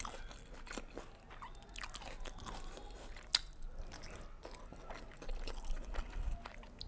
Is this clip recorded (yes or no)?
yes